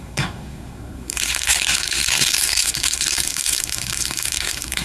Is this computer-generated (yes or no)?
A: yes